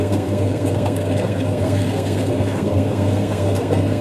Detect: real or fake fake